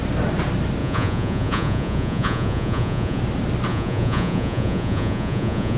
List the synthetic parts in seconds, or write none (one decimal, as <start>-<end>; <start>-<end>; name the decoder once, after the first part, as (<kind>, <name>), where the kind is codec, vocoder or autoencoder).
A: 0.8-3.2 (vocoder, Vocos); 3.7-5.8